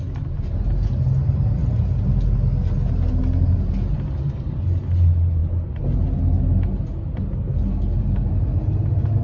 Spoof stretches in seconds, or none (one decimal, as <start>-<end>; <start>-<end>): none